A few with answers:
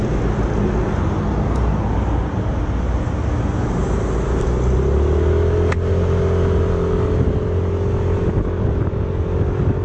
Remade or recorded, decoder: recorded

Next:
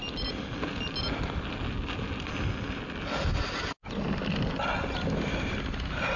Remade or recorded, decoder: recorded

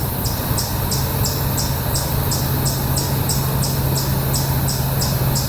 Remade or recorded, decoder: recorded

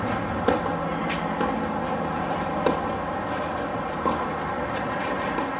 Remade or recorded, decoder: recorded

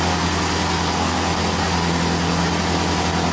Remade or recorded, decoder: recorded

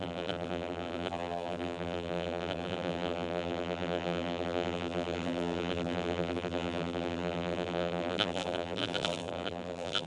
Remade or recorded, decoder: remade, vocoder, BigVGAN v2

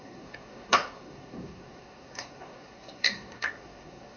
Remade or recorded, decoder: remade, codec, SNAC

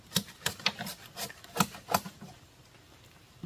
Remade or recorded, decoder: recorded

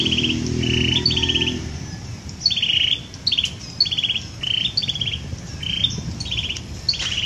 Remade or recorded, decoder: recorded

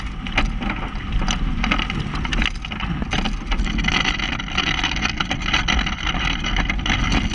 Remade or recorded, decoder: recorded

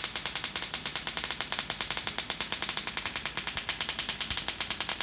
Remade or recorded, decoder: recorded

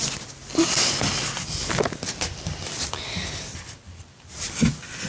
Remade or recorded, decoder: recorded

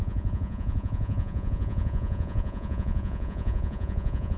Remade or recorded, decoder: remade, vocoder, Vocos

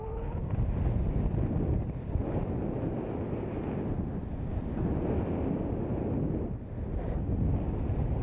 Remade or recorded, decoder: recorded